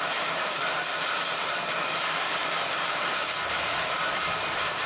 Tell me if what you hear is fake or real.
fake